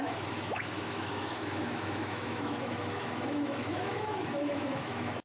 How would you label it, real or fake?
fake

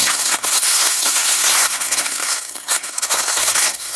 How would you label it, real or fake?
fake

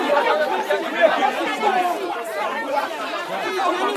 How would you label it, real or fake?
fake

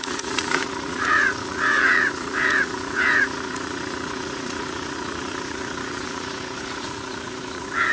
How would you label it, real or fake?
fake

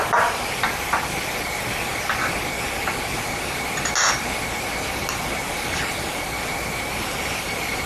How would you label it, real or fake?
real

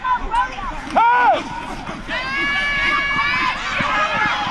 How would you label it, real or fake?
real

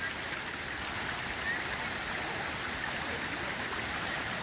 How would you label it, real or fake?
real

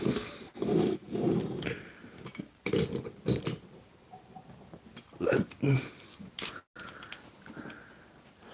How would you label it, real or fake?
real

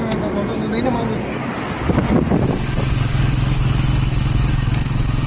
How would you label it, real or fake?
real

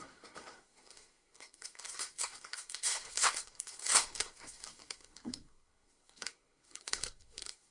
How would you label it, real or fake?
fake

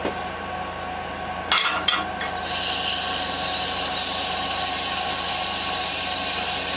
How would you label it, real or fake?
real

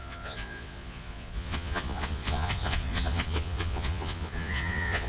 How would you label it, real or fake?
fake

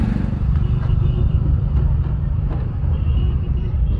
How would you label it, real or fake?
fake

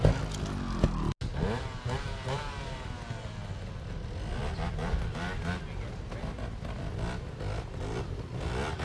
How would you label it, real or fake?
real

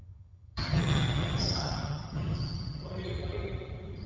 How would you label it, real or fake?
fake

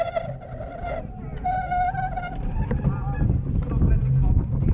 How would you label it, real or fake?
real